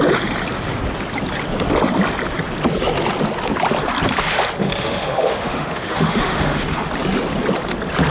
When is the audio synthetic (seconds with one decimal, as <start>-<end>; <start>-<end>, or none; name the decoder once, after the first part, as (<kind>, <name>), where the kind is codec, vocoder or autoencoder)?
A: 4.6-6.9 (autoencoder, DAC-VAE)